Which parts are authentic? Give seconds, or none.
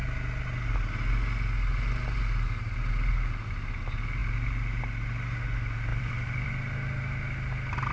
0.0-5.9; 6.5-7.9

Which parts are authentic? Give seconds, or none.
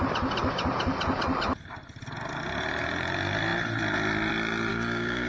0.0-4.7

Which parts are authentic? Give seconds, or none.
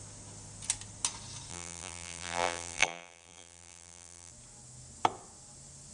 0.0-1.5; 4.3-5.9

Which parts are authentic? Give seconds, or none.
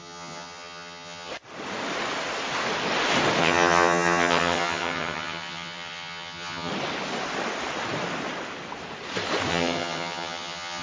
1.3-3.4; 6.7-9.5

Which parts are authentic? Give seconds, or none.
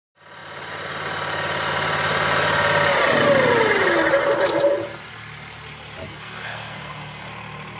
0.0-6.0; 7.2-7.8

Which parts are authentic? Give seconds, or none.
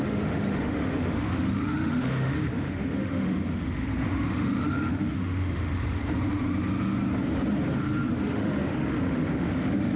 6.0-8.3